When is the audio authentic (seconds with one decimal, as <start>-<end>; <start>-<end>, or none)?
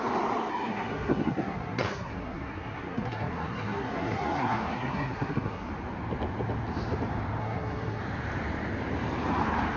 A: 0.0-0.5; 5.7-7.4; 8.0-9.8